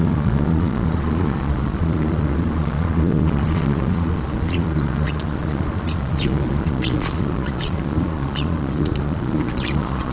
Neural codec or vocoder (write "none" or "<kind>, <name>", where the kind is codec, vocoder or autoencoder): vocoder, Vocos